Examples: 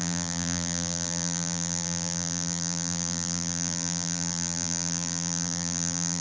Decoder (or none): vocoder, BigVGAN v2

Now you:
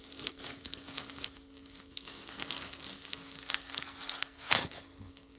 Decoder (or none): codec, SNAC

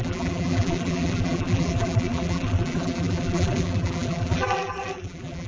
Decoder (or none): vocoder, BigVGAN v2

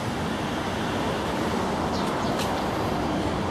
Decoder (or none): none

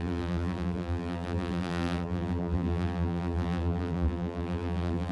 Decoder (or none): vocoder, BigVGAN v2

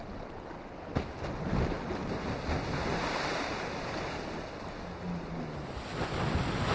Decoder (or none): none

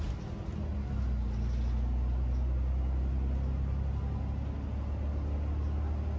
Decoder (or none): none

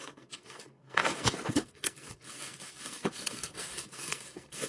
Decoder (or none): codec, SNAC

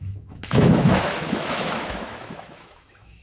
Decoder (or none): autoencoder, DAC-VAE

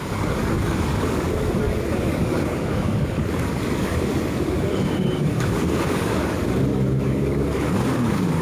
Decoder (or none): codec, DAC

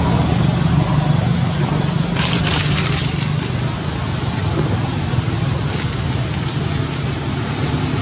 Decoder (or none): none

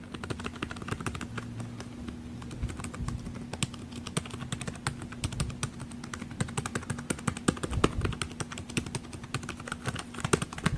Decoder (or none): none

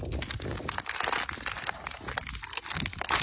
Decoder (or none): none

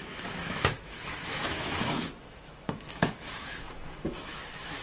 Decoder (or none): autoencoder, DAC-VAE